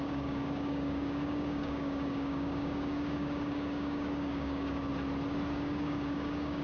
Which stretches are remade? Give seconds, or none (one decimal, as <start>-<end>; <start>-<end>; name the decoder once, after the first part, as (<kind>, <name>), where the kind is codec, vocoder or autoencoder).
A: 0.0-4.9 (codec, DAC); 5.5-6.6